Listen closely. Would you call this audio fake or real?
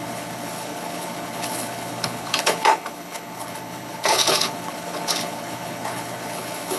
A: fake